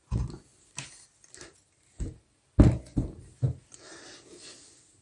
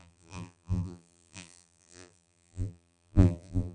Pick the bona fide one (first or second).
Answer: first